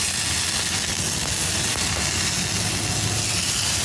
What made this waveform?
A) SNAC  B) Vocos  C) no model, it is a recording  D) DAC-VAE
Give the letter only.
C